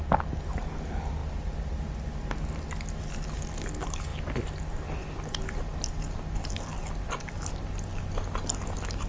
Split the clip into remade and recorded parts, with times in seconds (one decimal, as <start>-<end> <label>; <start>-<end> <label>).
0.0-9.1 recorded